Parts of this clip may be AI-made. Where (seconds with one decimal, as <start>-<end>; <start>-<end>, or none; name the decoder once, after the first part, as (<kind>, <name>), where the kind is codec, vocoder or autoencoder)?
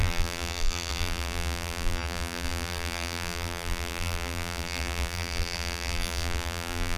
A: 0.0-7.0 (vocoder, BigVGAN v2)